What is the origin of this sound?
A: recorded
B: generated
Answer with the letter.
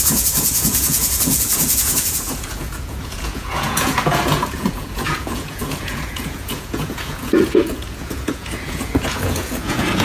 B